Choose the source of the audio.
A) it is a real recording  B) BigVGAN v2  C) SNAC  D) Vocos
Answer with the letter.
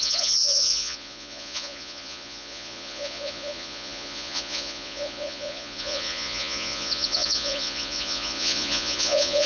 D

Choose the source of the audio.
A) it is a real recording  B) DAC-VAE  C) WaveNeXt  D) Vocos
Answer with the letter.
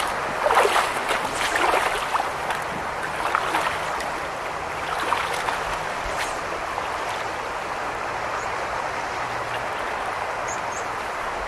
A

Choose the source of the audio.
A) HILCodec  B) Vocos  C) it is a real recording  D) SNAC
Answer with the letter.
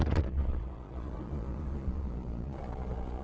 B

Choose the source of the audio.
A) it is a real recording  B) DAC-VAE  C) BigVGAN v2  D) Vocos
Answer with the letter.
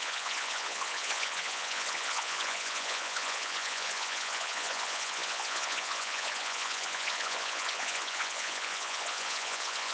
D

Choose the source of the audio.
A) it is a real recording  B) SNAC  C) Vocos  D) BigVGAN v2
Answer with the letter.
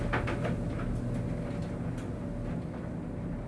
A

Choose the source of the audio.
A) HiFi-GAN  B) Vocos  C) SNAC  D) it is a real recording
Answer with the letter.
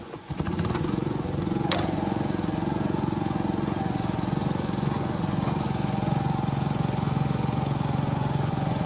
B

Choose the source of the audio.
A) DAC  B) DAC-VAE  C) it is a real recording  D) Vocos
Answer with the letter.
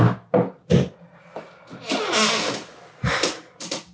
C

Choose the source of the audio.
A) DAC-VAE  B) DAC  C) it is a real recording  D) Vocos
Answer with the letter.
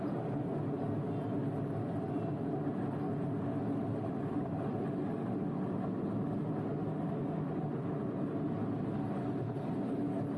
C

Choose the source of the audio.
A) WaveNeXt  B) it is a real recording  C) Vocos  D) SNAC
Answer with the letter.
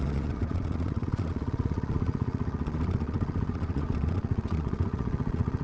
C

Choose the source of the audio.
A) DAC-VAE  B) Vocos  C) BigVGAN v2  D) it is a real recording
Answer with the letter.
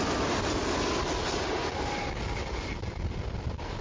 D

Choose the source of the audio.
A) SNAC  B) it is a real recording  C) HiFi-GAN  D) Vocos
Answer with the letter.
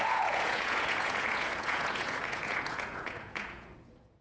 D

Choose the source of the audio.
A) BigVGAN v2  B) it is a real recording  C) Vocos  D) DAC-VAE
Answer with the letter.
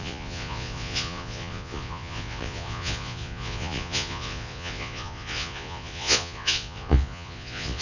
C